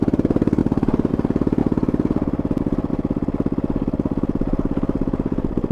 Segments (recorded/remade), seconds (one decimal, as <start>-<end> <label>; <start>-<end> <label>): 0.0-5.7 recorded